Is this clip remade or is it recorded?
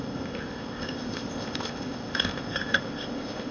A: remade